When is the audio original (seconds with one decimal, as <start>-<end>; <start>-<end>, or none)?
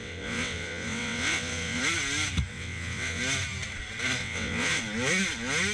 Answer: 1.8-2.5; 3.2-4.2; 4.8-5.7